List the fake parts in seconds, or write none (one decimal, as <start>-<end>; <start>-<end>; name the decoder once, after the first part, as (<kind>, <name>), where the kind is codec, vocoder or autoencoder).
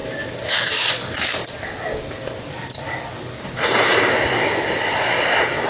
none